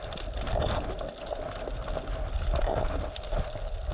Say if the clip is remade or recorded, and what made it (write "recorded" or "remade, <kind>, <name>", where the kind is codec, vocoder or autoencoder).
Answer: recorded